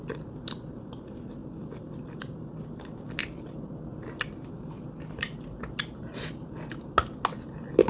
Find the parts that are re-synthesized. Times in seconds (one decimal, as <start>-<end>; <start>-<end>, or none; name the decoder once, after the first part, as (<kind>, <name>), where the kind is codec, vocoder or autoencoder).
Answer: none